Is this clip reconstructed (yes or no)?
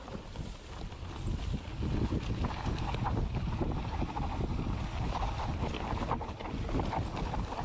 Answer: no